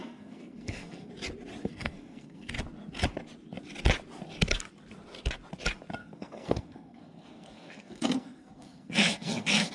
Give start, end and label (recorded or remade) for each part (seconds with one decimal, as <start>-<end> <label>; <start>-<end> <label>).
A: 0.0-1.1 remade; 1.1-1.7 recorded; 1.7-2.5 remade; 2.5-6.0 recorded; 6.0-9.7 remade